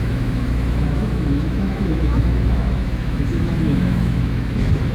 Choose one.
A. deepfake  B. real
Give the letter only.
A